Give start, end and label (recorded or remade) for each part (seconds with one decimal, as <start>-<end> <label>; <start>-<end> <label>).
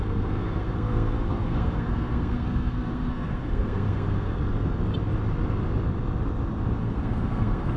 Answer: 0.0-4.4 remade; 4.4-6.8 recorded; 6.8-7.8 remade